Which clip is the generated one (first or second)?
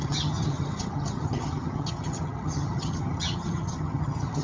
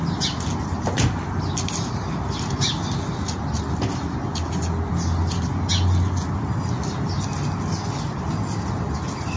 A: first